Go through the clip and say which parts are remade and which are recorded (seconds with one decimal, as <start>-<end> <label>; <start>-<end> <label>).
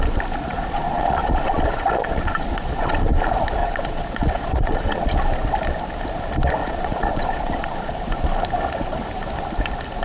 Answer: 0.0-0.5 recorded; 0.5-3.0 remade; 3.0-3.6 recorded; 3.6-5.1 remade; 5.1-6.6 recorded; 6.6-7.9 remade; 7.9-10.0 recorded